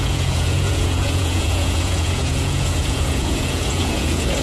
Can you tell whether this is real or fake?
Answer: fake